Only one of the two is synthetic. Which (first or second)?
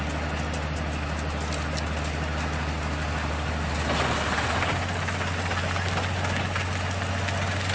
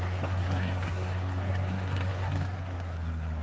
second